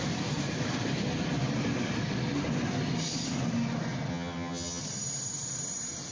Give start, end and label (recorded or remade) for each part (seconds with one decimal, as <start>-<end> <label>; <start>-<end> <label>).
0.0-4.1 recorded; 4.1-4.8 remade; 4.8-6.1 recorded